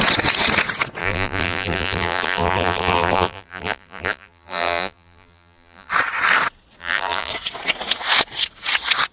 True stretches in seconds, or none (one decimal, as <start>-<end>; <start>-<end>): 0.0-1.0; 5.9-6.8; 7.3-9.1

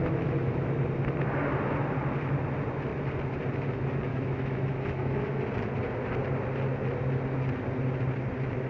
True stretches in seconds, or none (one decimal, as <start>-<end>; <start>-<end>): 0.8-4.1; 5.5-8.7

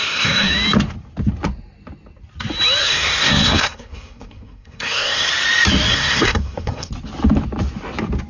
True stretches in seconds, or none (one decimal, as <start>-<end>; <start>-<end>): 0.5-2.8; 5.3-5.9; 6.9-8.3

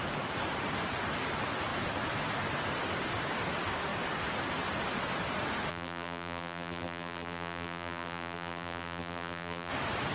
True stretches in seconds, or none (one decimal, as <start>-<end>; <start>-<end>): 0.0-5.7; 9.7-10.1

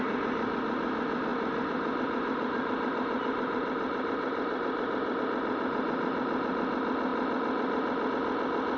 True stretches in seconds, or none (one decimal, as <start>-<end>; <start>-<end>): 0.0-1.3; 5.2-8.8

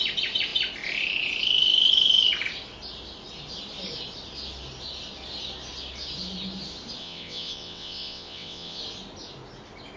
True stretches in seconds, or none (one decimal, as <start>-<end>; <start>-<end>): 0.0-7.0; 8.8-10.0

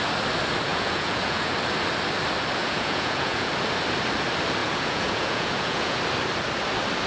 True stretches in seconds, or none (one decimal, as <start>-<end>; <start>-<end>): 0.0-0.7; 1.5-2.6; 3.5-4.6; 6.0-7.1